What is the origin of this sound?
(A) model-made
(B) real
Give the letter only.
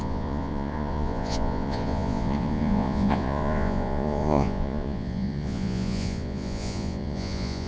A